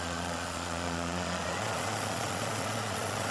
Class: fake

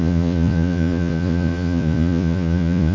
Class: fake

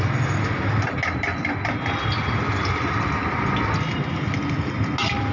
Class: real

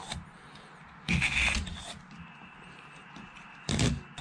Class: real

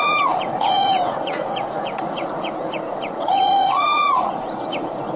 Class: fake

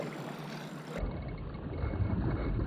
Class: real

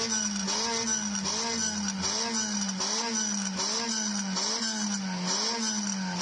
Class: real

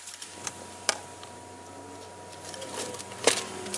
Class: real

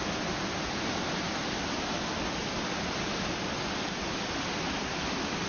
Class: real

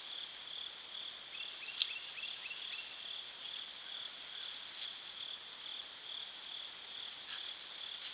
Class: real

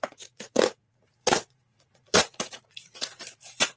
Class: fake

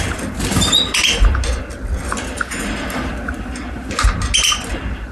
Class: real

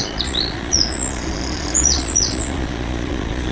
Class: fake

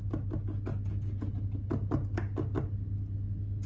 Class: real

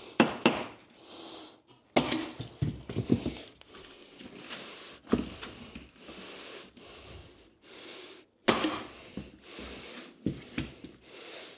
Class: real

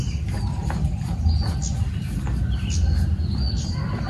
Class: real